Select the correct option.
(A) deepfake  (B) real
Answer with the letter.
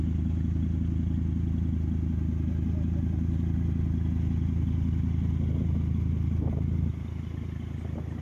B